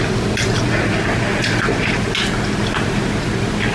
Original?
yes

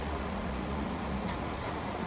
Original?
no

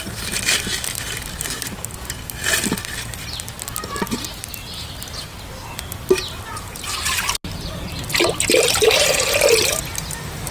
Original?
yes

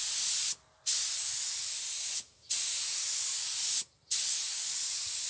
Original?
yes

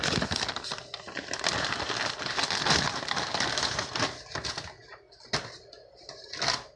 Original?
yes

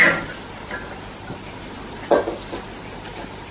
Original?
yes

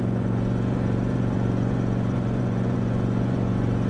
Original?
no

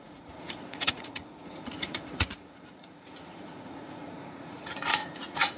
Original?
no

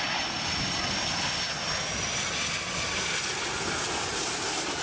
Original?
yes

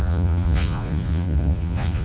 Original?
no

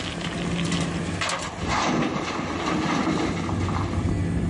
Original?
yes